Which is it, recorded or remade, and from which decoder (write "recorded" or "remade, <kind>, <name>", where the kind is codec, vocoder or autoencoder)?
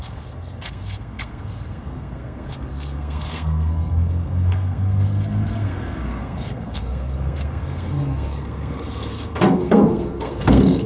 remade, codec, SNAC